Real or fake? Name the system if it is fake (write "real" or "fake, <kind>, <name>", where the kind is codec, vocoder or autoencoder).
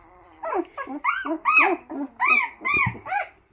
fake, vocoder, BigVGAN v2